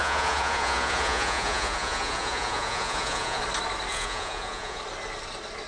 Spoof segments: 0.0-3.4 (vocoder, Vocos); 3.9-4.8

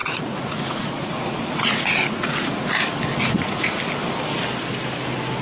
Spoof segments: 0.0-2.7 (vocoder, Vocos); 3.1-3.8

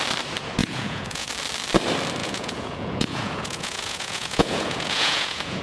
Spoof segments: 0.6-1.3 (vocoder, Vocos); 2.2-5.6

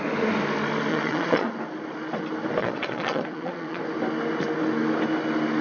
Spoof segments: 0.9-1.5 (vocoder, Vocos); 2.6-3.8

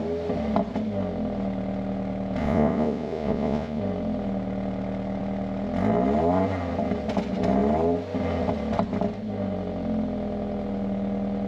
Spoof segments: 2.4-3.8 (vocoder, Vocos)

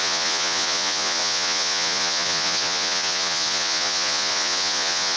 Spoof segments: 0.0-5.2 (vocoder, Vocos)

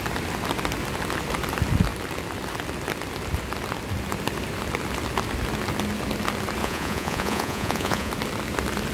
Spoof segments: 6.6-8.1 (vocoder, Vocos)

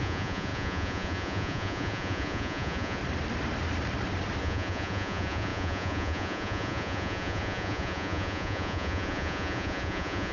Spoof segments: 0.0-3.0 (vocoder, Vocos); 4.4-10.3